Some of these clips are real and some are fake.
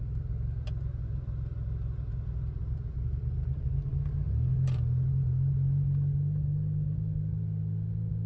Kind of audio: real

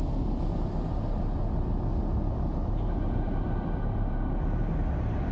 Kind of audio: real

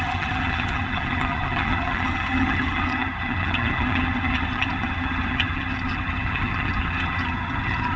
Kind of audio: fake